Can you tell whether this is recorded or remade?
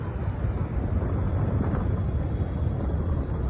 recorded